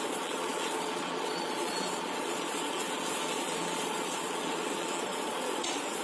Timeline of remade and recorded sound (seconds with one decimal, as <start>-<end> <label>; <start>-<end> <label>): 0.0-6.0 remade